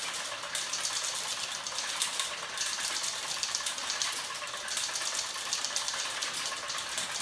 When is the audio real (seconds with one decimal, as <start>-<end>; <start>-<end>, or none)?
0.0-7.2